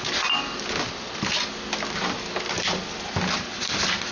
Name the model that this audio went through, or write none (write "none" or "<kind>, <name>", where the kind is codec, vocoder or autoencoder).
none